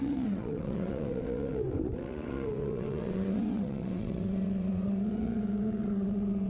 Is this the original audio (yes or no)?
no